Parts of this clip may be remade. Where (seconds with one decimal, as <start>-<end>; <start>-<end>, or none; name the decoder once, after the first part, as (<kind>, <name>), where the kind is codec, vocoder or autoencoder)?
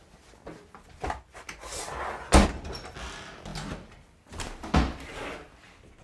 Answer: none